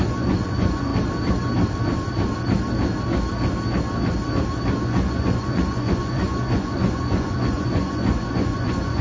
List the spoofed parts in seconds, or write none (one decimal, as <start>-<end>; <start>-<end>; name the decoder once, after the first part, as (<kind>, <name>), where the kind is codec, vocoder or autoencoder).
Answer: 0.0-0.9 (vocoder, Vocos); 4.8-9.0